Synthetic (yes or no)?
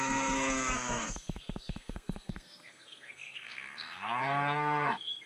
yes